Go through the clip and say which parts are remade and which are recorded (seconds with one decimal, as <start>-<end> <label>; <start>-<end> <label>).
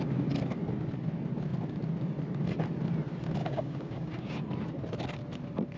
0.0-3.4 recorded; 3.4-4.4 remade; 4.4-5.8 recorded